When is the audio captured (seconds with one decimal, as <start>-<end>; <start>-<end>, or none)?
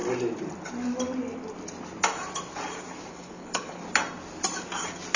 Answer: 0.0-3.1; 3.8-5.2